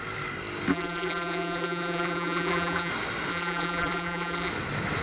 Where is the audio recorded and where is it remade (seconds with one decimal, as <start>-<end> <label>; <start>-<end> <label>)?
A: 0.0-0.7 recorded; 0.7-2.9 remade; 2.9-3.3 recorded; 3.3-4.5 remade; 4.5-5.0 recorded